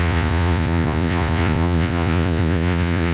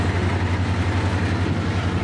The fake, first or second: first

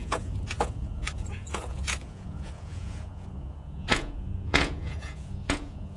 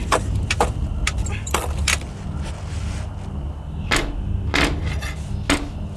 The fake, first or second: first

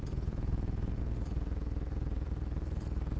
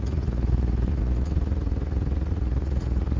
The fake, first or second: second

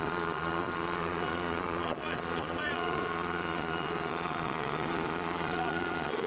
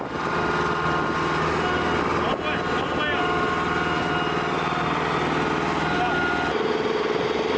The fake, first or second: first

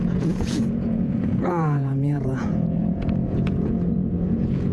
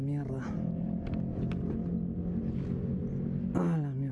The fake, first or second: first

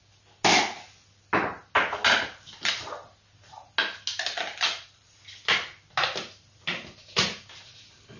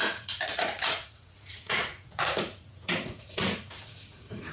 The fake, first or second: second